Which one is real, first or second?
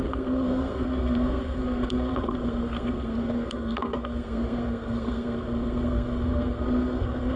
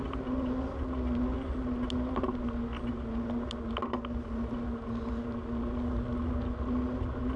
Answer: second